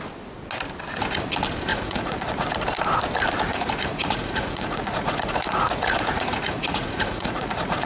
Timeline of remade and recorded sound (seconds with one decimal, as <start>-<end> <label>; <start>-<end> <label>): 0.0-1.7 recorded; 1.7-2.3 remade; 2.3-3.5 recorded; 3.5-7.9 remade